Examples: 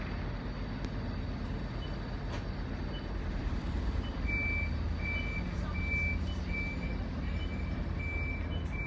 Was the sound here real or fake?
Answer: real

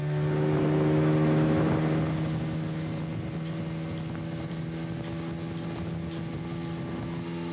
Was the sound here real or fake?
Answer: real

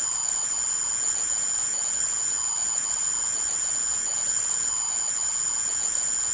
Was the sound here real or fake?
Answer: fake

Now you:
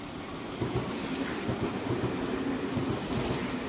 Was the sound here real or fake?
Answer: real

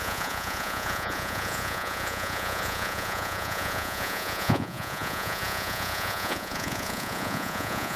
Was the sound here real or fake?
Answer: fake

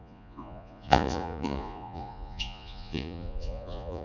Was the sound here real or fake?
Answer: fake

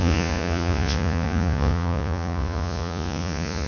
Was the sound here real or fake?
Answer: fake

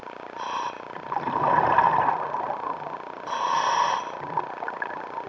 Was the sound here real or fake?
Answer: real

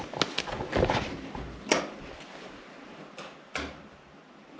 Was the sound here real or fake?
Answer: real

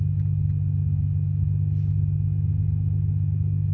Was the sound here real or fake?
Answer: real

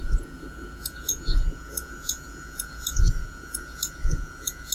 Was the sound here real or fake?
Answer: fake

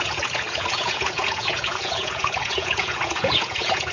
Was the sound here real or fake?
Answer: fake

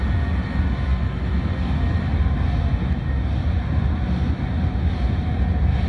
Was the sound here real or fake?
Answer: real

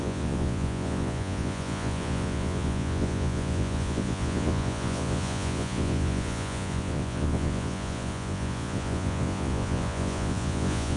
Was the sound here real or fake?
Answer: fake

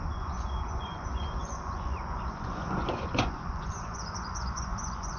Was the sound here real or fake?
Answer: fake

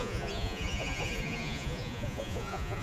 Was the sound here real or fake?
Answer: fake